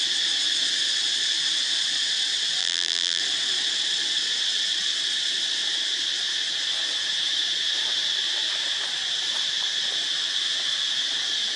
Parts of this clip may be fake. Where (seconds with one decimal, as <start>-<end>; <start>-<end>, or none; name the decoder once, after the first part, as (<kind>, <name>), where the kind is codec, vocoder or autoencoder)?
2.6-3.2 (vocoder, BigVGAN v2)